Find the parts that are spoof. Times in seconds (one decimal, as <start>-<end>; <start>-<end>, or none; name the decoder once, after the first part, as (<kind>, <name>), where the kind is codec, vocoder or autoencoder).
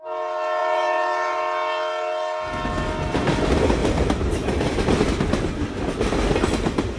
0.6-1.4 (vocoder, BigVGAN v2); 3.8-4.8